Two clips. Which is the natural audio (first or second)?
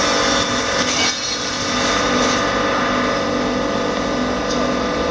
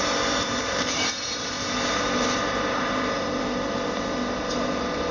first